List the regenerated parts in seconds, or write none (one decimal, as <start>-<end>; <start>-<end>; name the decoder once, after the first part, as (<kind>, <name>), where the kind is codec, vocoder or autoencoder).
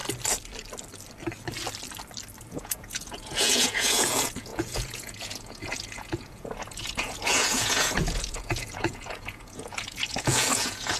2.5-11.0 (vocoder, Vocos)